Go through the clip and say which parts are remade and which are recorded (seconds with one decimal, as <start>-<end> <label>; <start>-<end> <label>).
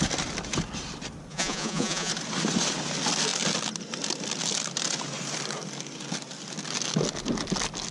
0.0-1.3 recorded; 1.3-2.1 remade; 2.1-7.9 recorded